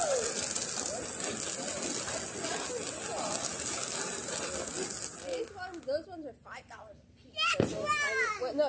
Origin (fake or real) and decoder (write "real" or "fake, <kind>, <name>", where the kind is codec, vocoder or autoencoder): real